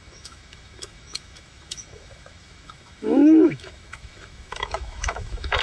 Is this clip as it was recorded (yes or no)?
no